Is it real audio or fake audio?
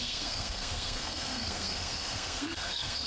fake